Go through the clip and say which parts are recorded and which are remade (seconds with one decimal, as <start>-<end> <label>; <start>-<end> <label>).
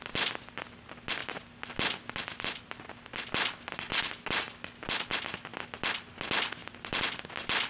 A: 0.0-7.7 recorded